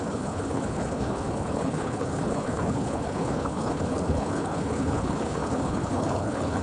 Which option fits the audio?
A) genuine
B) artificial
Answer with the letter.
B